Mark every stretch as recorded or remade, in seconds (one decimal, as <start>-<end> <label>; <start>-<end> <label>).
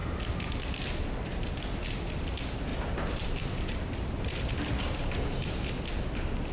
0.0-2.7 recorded; 2.7-3.9 remade; 3.9-6.5 recorded